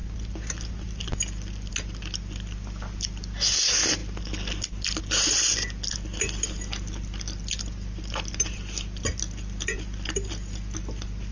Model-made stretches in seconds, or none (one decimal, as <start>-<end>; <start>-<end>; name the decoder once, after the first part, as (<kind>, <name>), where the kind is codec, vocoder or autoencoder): none